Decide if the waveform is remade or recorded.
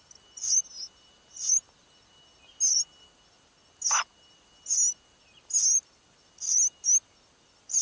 recorded